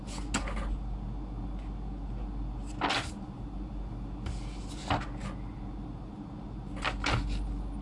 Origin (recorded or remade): recorded